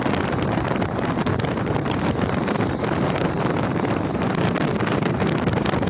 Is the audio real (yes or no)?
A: no